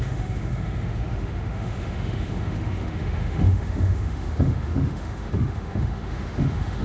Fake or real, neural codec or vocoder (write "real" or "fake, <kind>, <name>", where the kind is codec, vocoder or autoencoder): fake, autoencoder, DAC-VAE